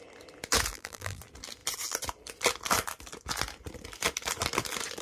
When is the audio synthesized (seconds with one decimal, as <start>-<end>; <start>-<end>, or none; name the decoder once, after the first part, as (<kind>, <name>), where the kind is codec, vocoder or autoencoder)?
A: 0.7-1.2 (vocoder, BigVGAN v2)